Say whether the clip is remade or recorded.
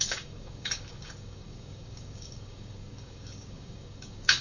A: remade